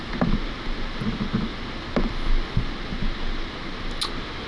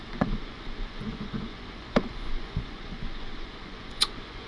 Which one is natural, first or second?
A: first